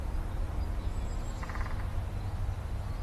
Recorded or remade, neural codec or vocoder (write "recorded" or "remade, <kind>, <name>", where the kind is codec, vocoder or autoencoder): recorded